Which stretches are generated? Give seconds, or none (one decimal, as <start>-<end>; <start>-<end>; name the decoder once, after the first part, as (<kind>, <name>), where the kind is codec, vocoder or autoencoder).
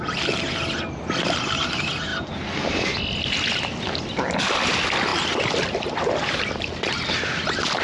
none